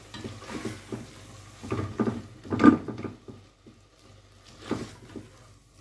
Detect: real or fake real